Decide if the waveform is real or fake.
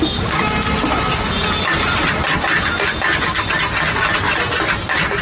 real